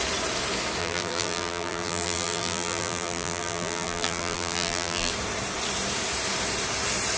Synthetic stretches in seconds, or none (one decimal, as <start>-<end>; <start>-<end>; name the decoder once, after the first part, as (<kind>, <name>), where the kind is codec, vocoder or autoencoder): 0.8-5.1 (vocoder, BigVGAN v2)